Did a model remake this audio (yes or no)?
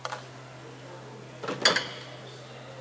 no